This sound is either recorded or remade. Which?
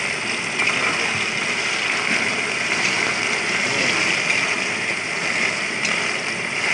recorded